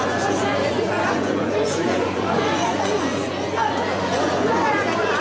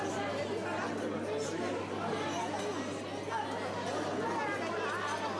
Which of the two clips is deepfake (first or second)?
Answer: first